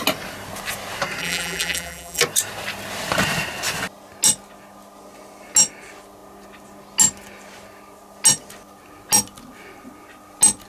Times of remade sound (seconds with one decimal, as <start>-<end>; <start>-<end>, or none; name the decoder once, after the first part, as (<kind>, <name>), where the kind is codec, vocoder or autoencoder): 1.2-2.2 (vocoder, BigVGAN v2)